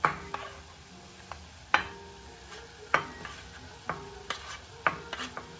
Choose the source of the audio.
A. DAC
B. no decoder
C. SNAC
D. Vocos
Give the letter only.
B